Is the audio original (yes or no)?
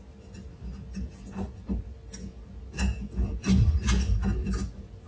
yes